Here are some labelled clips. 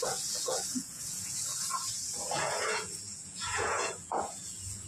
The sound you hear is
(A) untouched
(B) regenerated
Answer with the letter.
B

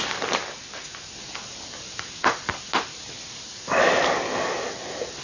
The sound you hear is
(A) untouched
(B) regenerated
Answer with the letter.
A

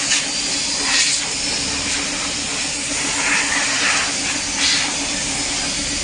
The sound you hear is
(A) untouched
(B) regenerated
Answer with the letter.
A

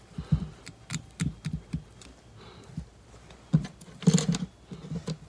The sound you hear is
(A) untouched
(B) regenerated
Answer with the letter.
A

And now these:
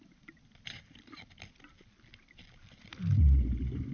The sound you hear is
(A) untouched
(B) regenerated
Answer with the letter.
A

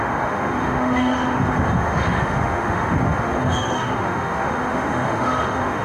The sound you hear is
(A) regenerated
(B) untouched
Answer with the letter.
A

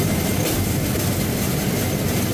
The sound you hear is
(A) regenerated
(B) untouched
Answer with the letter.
B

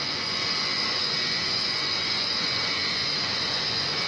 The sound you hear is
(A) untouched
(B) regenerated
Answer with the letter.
B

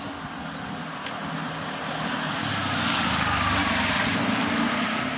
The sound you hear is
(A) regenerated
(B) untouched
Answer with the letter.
B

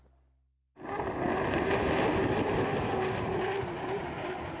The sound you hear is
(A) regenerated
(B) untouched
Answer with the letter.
B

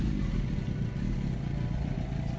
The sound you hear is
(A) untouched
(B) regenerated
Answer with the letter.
A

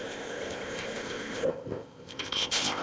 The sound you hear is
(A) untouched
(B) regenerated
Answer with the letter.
B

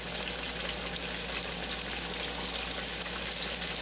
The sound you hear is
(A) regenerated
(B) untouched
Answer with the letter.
B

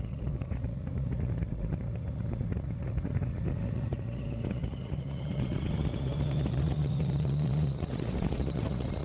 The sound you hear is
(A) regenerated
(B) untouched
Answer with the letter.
A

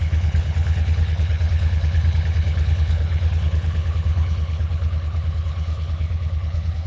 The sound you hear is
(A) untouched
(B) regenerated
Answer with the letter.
B